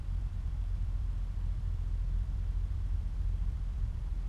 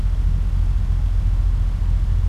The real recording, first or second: second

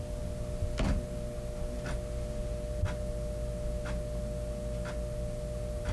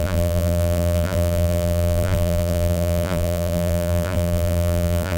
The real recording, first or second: first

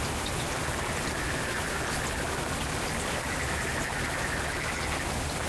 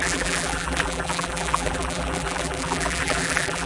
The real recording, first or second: first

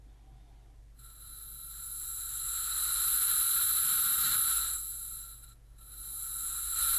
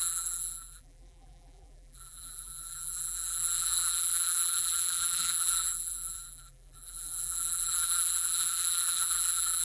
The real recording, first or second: first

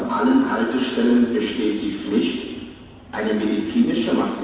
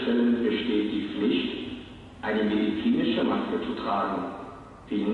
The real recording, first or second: second